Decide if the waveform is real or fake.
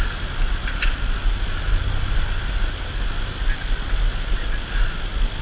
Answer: real